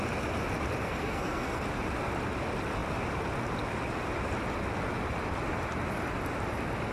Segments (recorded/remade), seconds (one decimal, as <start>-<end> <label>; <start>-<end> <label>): 0.0-0.8 recorded; 0.8-1.6 remade; 1.6-6.9 recorded